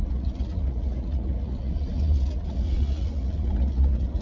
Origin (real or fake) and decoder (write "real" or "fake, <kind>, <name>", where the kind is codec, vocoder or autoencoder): fake, vocoder, Vocos